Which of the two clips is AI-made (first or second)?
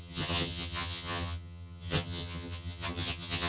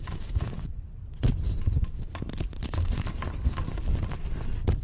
first